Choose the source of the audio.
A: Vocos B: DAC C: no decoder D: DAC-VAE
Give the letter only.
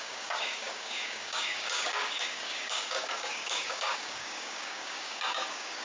B